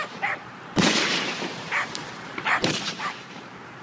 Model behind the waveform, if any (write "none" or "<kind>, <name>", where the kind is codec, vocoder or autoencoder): vocoder, BigVGAN v2